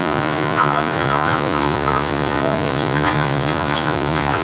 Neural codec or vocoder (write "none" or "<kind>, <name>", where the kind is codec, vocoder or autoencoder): vocoder, Vocos